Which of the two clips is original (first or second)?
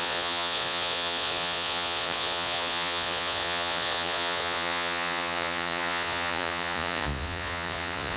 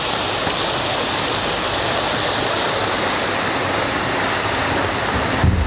second